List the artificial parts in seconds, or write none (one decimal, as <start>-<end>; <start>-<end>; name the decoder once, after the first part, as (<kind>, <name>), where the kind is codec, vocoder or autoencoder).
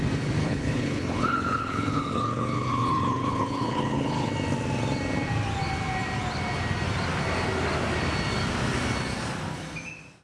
0.4-4.3 (codec, HILCodec)